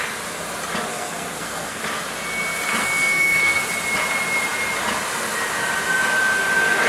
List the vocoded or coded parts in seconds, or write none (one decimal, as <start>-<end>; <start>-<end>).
0.9-1.8; 2.8-3.6